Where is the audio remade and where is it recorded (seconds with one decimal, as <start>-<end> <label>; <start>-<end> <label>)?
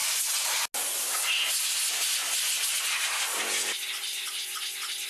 0.0-2.2 recorded; 2.2-4.2 remade; 4.2-5.1 recorded